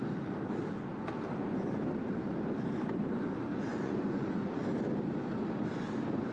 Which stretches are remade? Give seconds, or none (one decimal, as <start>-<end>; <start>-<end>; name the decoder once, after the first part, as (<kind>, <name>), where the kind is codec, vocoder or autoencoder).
3.5-4.5 (vocoder, Vocos)